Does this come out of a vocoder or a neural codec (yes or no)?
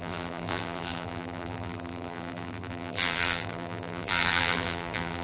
yes